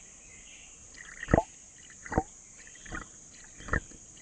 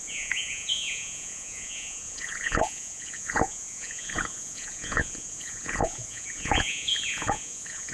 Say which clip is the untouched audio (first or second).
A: first